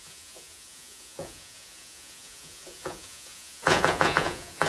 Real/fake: fake